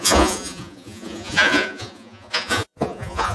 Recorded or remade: remade